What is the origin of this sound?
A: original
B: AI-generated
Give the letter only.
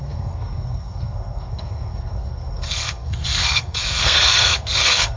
B